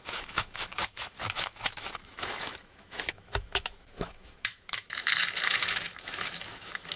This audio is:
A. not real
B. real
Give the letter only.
A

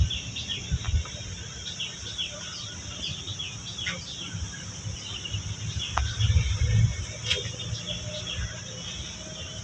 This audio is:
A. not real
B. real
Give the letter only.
B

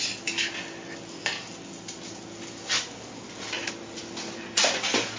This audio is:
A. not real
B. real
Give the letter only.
B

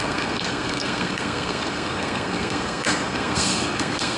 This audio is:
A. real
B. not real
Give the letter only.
B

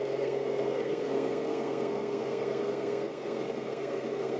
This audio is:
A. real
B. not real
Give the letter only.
B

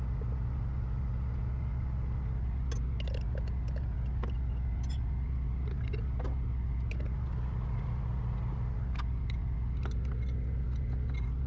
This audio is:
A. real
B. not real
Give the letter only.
A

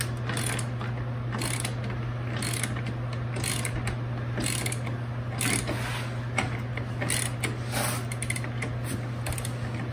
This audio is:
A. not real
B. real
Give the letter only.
B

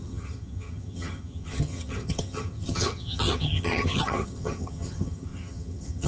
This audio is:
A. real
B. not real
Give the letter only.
B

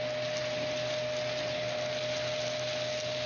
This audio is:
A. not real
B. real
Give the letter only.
B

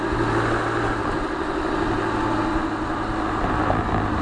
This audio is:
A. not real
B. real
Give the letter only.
B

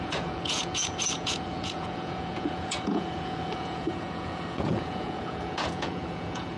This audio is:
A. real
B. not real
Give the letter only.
B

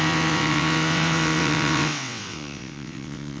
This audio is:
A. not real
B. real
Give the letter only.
A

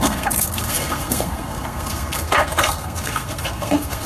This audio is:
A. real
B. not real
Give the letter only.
B